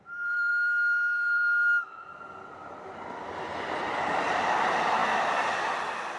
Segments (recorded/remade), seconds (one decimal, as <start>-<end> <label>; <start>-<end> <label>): 0.0-6.2 recorded